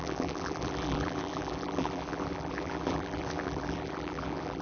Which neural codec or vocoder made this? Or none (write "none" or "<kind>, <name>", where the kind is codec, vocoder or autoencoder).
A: vocoder, BigVGAN v2